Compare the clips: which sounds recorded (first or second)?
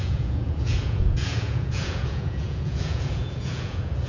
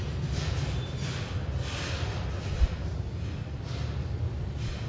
second